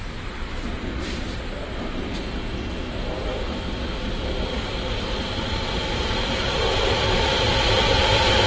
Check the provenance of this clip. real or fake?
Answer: fake